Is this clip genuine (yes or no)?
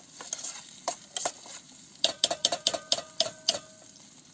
yes